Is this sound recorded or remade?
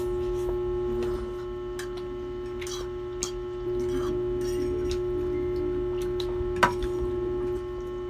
recorded